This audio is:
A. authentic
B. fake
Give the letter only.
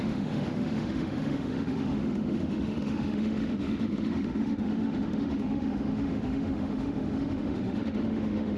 B